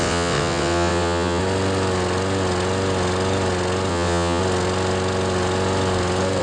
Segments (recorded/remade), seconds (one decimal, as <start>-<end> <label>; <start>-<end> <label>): 0.0-1.4 remade; 1.4-3.9 recorded; 3.9-4.4 remade; 4.4-6.4 recorded